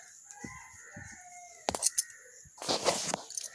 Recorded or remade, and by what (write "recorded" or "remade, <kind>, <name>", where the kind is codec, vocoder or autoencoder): recorded